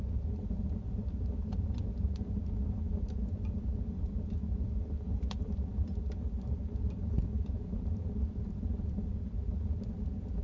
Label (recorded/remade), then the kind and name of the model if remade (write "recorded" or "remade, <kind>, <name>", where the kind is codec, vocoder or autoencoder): remade, vocoder, BigVGAN v2